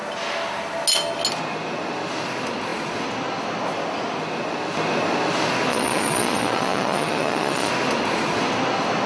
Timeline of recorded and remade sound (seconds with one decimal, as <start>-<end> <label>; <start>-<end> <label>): 0.0-5.7 recorded; 5.7-7.7 remade; 7.7-9.1 recorded